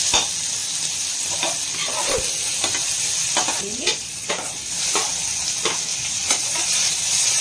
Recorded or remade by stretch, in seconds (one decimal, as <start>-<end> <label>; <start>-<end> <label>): 0.0-3.7 recorded; 3.7-5.1 remade; 5.1-5.9 recorded; 5.9-7.4 remade